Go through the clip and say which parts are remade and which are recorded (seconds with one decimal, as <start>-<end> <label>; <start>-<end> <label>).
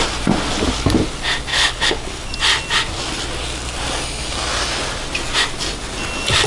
0.0-1.5 recorded; 1.5-2.3 remade; 2.3-6.5 recorded